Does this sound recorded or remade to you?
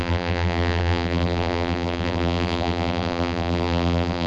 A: remade